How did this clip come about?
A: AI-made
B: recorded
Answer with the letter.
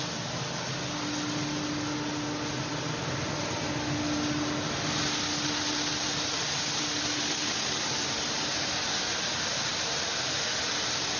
B